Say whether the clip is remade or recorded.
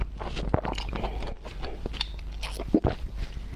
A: recorded